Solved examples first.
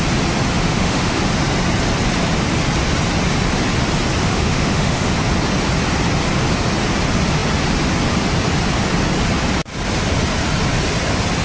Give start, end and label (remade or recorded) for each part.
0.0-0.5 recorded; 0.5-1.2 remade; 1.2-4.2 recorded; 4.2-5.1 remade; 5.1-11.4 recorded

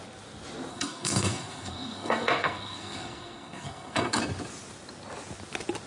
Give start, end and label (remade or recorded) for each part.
0.0-0.7 recorded; 0.7-4.2 remade; 4.2-5.9 recorded

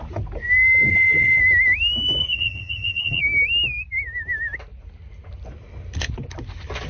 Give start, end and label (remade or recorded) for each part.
0.0-0.9 recorded; 0.9-1.4 remade; 1.4-2.2 recorded; 2.2-3.2 remade; 3.2-6.9 recorded